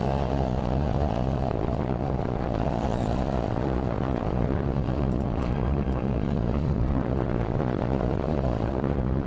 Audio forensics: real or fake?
fake